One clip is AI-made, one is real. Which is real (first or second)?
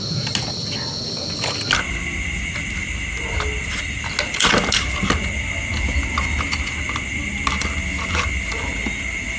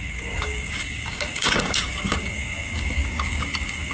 first